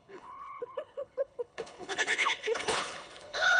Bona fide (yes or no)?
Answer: no